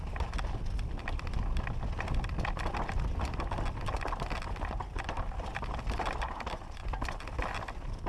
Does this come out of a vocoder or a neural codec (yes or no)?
no